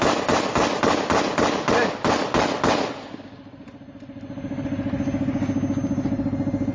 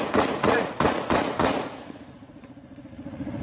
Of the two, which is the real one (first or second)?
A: first